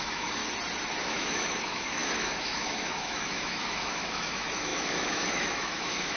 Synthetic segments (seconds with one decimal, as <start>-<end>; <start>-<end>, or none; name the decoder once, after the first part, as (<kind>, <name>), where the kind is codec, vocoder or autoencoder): 0.0-0.4 (autoencoder, DAC-VAE); 1.0-6.2

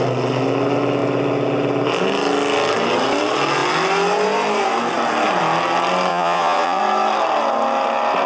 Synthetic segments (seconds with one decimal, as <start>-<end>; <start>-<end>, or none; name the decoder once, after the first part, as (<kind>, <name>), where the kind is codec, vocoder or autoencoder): 6.1-6.8 (vocoder, Vocos)

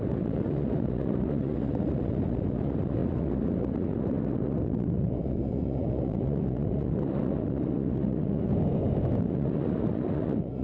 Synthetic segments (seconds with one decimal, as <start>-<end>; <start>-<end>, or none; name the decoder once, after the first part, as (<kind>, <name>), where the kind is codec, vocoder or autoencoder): 0.0-8.5 (vocoder, Vocos); 9.2-10.6

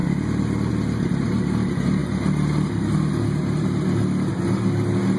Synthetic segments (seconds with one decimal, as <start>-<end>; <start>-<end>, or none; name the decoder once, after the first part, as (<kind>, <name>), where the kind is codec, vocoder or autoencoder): none